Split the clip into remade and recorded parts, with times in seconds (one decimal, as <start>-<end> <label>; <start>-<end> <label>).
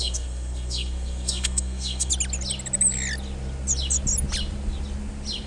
0.0-2.1 remade; 2.1-5.5 recorded